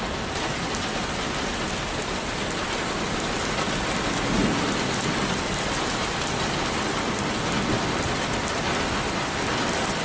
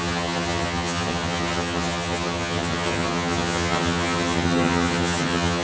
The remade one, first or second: second